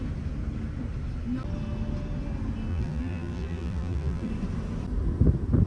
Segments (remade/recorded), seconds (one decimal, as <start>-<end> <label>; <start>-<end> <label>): 0.0-2.7 recorded; 2.7-4.3 remade; 4.3-5.7 recorded